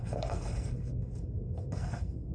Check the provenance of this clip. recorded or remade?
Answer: remade